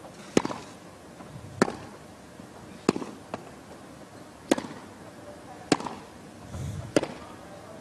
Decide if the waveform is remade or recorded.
recorded